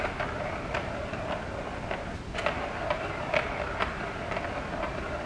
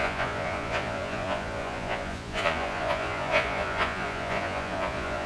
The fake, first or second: second